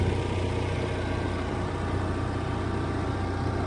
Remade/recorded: recorded